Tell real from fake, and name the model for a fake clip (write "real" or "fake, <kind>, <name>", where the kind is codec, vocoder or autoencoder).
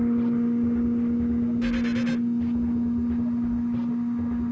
real